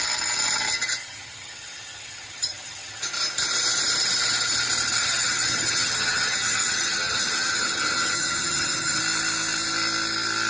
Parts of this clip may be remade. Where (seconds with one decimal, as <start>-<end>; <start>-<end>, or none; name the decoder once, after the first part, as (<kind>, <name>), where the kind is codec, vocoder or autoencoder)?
1.0-3.0 (vocoder, HiFi-GAN); 5.0-9.0